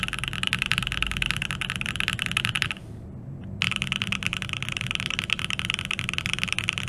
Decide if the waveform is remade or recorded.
recorded